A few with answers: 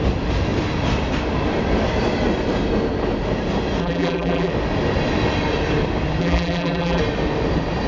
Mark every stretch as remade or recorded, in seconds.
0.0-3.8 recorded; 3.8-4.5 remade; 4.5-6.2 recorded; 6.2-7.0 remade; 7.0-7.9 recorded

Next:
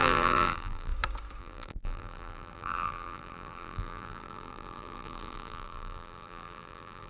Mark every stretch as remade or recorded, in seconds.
0.0-0.9 remade; 0.9-1.4 recorded; 1.4-7.1 remade

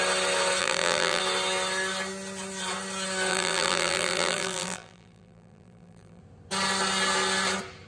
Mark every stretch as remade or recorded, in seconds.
0.0-0.6 recorded; 0.6-1.2 remade; 1.2-3.3 recorded; 3.3-6.2 remade; 6.2-7.9 recorded